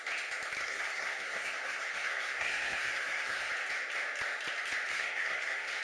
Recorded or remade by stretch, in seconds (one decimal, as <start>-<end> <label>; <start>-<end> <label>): 0.0-0.6 recorded; 0.6-3.5 remade; 3.5-4.9 recorded; 4.9-5.8 remade